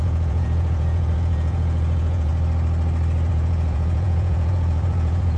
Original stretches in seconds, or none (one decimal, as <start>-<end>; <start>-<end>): 2.3-3.3